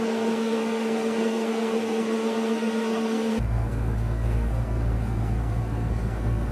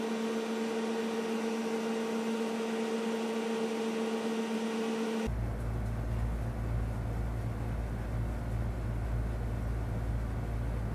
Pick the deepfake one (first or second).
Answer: first